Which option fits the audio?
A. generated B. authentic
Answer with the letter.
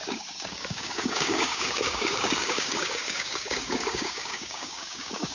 A